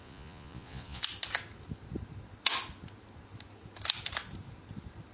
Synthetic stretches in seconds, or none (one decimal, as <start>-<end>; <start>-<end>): 0.0-1.0